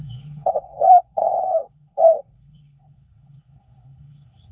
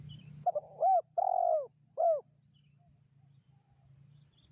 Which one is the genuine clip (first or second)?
second